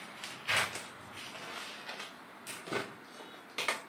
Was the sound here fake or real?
real